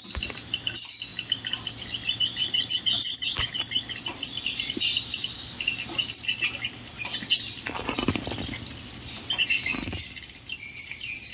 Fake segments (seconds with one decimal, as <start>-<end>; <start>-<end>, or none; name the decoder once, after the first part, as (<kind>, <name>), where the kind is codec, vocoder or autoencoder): none